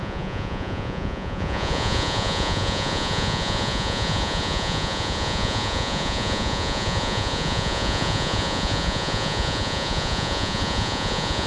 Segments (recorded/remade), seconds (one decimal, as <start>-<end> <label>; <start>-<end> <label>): 0.0-11.5 remade